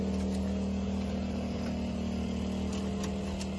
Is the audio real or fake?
real